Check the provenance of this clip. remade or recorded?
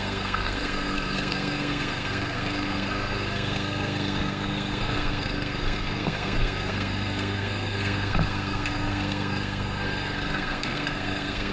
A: remade